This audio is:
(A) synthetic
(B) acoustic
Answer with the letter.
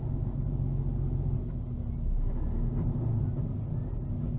B